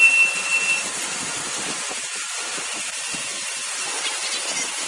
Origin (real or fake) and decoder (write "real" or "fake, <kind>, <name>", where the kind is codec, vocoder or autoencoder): real